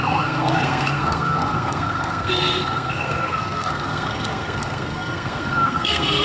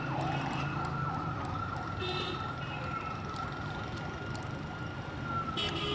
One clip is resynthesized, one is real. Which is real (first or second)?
second